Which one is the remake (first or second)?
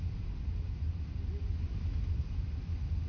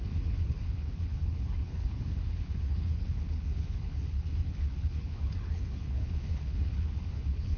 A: second